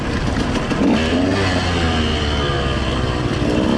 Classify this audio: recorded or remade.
recorded